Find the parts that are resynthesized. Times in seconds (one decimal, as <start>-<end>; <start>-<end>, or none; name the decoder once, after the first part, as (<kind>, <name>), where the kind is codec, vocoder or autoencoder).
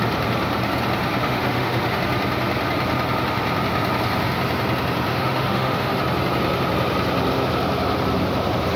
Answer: 1.2-2.0 (autoencoder, DAC-VAE); 5.1-6.0